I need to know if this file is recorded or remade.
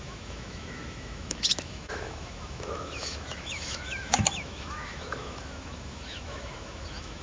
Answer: remade